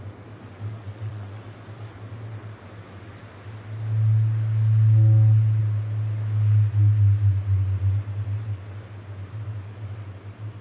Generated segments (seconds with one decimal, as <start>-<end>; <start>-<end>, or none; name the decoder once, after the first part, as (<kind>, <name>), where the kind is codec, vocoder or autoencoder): 0.8-1.4 (vocoder, WaveNeXt)